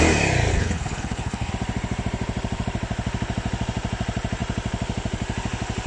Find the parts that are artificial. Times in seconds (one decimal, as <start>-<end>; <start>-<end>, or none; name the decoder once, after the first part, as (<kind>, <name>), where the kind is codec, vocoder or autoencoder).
0.5-1.5 (codec, HILCodec)

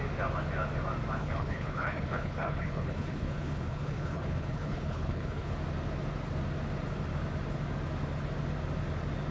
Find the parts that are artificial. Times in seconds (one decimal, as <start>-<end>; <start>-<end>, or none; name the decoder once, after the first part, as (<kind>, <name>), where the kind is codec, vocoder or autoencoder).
1.2-5.5 (codec, HILCodec)

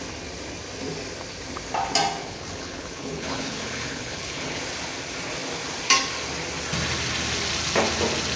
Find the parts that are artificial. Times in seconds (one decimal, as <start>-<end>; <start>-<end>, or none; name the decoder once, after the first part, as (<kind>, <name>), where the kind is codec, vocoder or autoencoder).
2.2-4.6 (codec, HILCodec)